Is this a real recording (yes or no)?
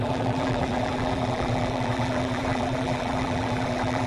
no